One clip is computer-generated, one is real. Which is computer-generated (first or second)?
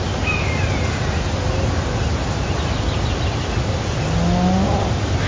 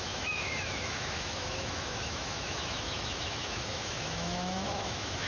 second